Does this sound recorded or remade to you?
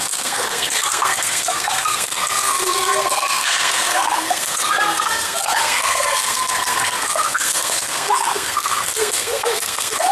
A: remade